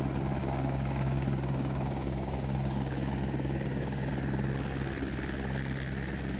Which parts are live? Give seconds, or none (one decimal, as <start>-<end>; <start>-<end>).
0.0-0.4; 4.1-6.4